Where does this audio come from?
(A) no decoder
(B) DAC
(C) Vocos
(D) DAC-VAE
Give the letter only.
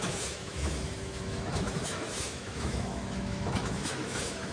D